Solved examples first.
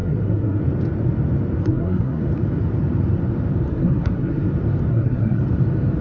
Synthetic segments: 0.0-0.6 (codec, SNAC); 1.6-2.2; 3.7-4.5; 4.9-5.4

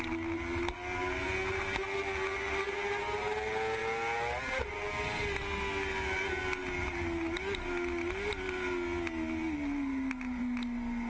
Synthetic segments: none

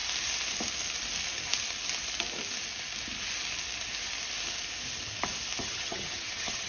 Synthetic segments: 5.6-6.7 (vocoder, HiFi-GAN)